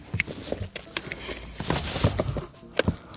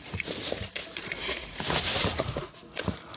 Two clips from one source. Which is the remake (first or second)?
second